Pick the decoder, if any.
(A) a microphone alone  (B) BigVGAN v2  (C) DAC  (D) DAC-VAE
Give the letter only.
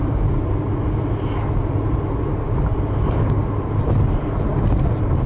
A